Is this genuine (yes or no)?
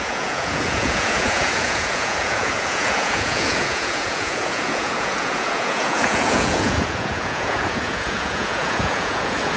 no